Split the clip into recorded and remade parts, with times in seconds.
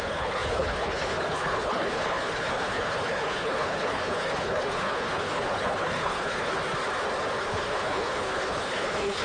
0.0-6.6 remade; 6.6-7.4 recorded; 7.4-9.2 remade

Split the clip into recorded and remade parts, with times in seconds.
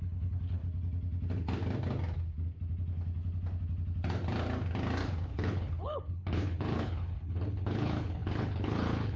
0.0-0.6 remade; 0.6-5.3 recorded; 5.3-9.2 remade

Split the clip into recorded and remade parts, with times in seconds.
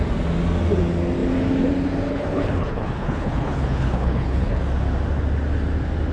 0.0-2.1 recorded; 2.1-4.6 remade; 4.6-6.1 recorded